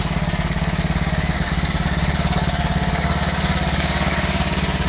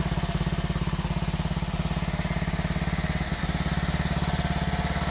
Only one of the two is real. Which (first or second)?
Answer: second